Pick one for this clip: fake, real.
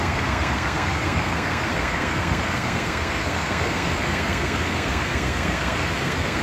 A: fake